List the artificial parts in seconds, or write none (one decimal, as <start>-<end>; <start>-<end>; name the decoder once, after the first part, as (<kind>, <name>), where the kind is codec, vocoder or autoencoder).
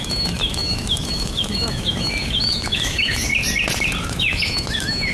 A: 0.0-3.3 (autoencoder, DAC-VAE); 4.0-5.1